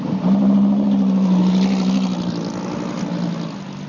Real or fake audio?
real